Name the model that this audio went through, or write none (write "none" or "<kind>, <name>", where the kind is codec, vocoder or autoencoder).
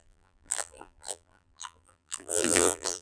vocoder, BigVGAN v2